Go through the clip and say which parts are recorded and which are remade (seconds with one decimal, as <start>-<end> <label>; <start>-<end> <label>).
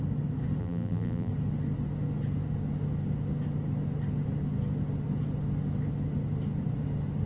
0.0-0.6 recorded; 0.6-1.3 remade; 1.3-7.3 recorded